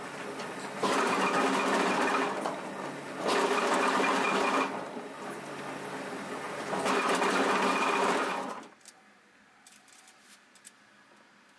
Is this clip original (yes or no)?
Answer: yes